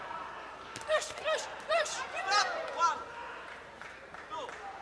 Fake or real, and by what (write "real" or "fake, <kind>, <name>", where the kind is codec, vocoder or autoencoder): fake, vocoder, BigVGAN v2